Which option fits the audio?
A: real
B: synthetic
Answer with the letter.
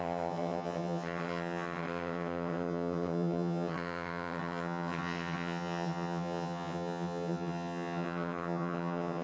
B